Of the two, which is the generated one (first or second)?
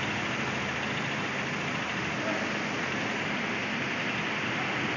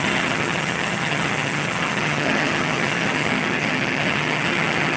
second